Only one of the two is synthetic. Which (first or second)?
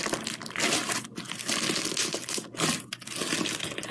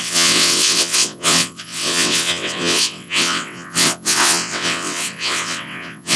second